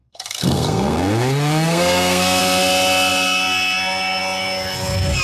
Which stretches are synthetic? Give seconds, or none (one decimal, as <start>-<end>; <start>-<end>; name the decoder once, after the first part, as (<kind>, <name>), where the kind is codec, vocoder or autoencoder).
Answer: 0.0-2.4 (codec, SNAC)